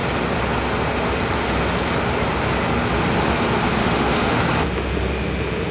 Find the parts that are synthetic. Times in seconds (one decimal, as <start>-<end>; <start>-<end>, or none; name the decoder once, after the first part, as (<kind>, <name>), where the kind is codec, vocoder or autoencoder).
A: 3.8-4.4 (autoencoder, DAC-VAE)